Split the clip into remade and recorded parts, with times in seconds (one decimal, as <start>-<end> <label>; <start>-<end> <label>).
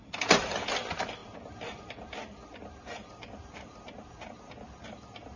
0.0-0.5 remade; 0.5-5.4 recorded